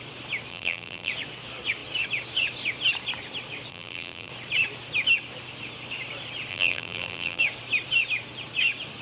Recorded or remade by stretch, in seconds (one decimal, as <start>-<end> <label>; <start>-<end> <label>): 0.0-0.5 recorded; 0.5-1.1 remade; 1.1-3.7 recorded; 3.7-4.3 remade; 4.3-6.5 recorded; 6.5-7.4 remade; 7.4-9.0 recorded